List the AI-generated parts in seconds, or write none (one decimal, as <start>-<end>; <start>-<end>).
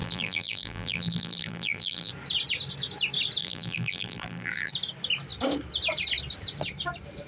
0.0-2.1; 3.4-4.7